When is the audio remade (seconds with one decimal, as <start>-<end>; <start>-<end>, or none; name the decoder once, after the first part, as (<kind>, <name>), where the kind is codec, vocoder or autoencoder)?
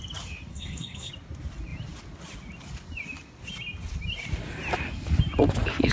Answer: 0.5-1.1 (codec, SNAC)